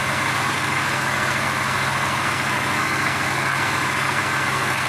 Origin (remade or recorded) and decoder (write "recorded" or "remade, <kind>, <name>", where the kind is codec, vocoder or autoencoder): remade, codec, SNAC